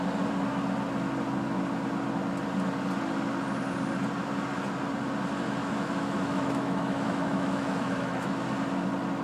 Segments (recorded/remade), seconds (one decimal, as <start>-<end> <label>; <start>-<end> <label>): 0.0-5.6 recorded; 5.6-8.3 remade; 8.3-9.2 recorded